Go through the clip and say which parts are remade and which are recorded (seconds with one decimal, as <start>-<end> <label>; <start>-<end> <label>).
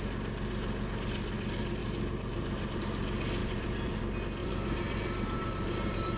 0.0-1.8 recorded; 1.8-2.8 remade; 2.8-3.4 recorded; 3.4-4.0 remade; 4.0-4.4 recorded; 4.4-6.2 remade